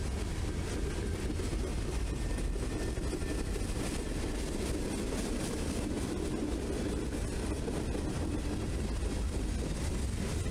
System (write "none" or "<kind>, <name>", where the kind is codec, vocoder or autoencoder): none